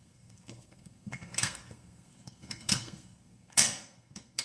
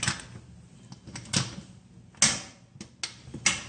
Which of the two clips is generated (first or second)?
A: first